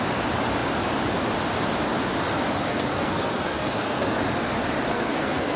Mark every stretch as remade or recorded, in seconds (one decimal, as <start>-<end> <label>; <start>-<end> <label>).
0.0-2.7 recorded; 2.7-4.2 remade; 4.2-4.9 recorded; 4.9-5.6 remade